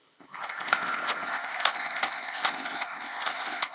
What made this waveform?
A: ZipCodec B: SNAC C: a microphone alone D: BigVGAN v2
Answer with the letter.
A